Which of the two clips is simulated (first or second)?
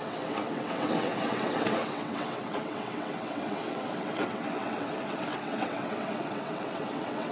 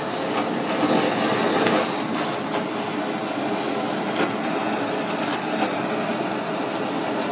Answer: first